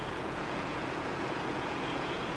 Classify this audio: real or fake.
fake